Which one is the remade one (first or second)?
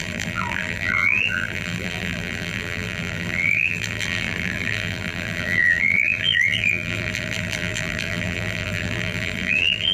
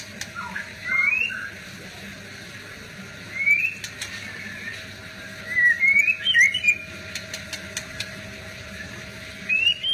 first